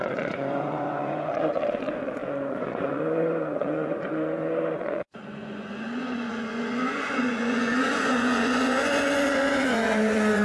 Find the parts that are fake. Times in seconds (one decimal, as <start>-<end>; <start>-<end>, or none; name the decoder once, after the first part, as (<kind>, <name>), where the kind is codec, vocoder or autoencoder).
0.0-10.4 (vocoder, Vocos)